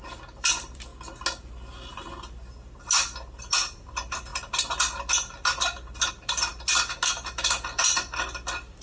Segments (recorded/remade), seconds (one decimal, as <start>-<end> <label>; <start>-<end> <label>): 0.0-0.9 remade; 0.9-3.5 recorded; 3.5-4.3 remade; 4.3-6.1 recorded; 6.1-6.5 remade; 6.5-7.3 recorded; 7.3-8.8 remade